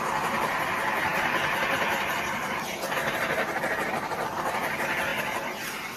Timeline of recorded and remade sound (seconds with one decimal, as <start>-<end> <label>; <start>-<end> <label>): 0.0-5.1 remade; 5.1-6.0 recorded